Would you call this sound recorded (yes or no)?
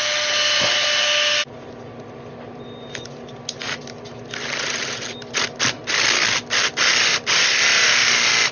yes